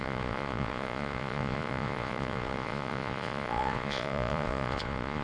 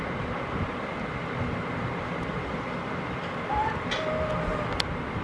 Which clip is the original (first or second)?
second